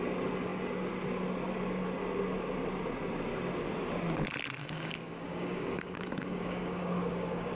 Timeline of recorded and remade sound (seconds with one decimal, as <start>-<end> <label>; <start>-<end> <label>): 0.0-4.6 recorded; 4.6-7.5 remade